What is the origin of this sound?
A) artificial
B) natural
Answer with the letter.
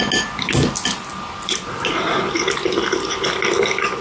B